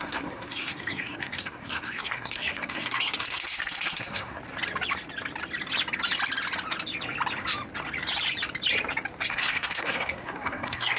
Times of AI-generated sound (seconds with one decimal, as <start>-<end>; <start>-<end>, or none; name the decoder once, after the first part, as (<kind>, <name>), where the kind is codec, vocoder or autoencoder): 0.0-4.4 (codec, SNAC); 9.3-11.0